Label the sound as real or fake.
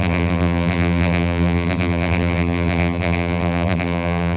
fake